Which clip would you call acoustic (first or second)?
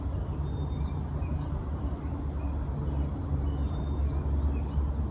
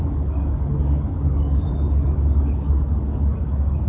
first